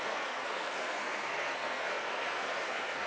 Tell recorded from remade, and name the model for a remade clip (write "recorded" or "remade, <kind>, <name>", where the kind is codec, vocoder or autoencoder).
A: remade, codec, SNAC